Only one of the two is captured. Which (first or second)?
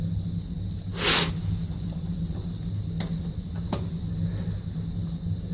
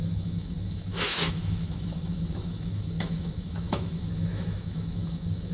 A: first